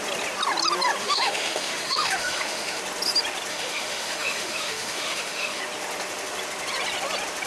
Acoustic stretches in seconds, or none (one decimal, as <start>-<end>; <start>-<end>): 0.0-1.0; 2.8-3.5; 5.6-7.5

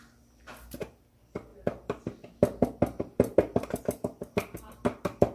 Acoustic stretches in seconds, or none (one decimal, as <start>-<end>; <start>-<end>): 0.0-5.3

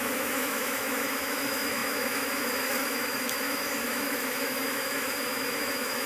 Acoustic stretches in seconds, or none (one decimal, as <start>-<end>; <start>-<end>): none

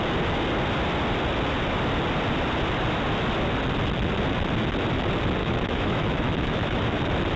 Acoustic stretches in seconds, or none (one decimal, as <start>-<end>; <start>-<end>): 0.0-5.4; 6.8-7.4

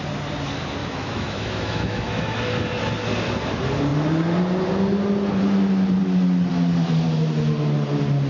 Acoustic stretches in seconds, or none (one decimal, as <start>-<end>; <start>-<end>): 0.0-0.8; 2.4-8.3

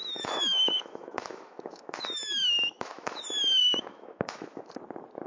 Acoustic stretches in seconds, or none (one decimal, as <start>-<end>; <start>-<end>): 3.2-3.6; 4.7-5.3

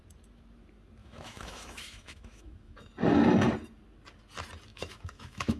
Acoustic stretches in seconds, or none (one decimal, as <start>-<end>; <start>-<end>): 0.0-1.0; 2.9-4.7